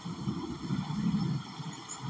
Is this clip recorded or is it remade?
remade